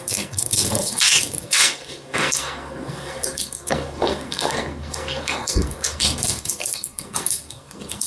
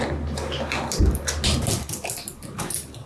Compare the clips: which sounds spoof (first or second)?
first